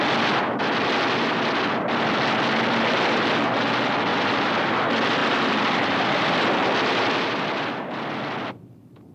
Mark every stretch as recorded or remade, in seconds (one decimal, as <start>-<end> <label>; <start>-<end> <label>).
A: 0.0-4.1 recorded; 4.1-4.7 remade; 4.7-5.2 recorded; 5.2-6.5 remade; 6.5-9.1 recorded